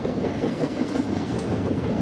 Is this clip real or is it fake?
fake